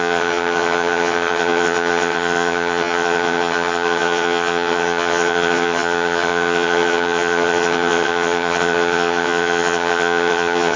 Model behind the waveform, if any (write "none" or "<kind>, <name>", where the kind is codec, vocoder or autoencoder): vocoder, HiFi-GAN